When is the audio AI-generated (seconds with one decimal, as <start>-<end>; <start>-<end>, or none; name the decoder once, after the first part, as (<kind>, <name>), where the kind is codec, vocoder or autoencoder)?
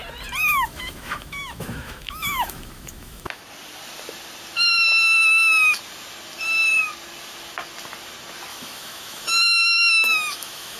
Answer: 0.4-3.4 (autoencoder, DAC-VAE); 8.5-10.8